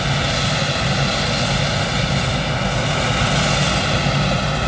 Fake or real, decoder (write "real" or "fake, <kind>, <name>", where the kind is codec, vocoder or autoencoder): real